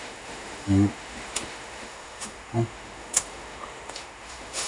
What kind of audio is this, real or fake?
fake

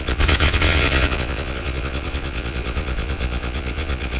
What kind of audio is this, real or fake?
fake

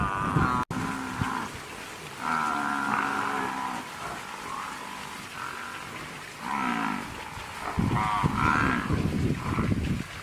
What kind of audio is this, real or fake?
real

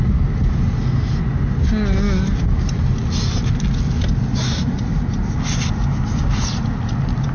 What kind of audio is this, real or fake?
real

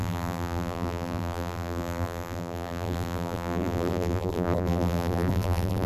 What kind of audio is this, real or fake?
fake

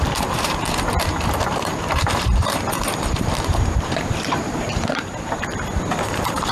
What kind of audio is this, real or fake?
fake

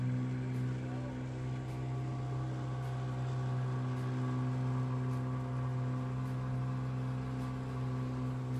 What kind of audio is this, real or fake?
real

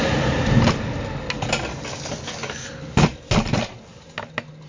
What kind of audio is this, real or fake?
real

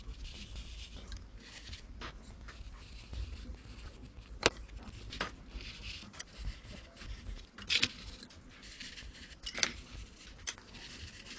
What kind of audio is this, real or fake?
real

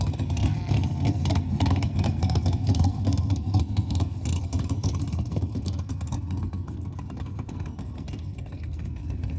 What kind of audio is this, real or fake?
fake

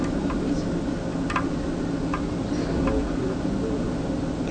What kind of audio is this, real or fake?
real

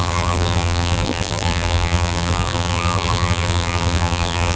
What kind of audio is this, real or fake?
fake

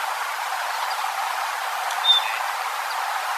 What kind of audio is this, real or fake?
real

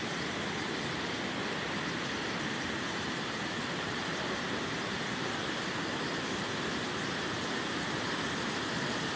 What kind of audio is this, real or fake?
real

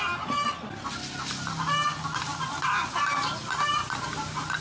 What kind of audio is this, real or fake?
real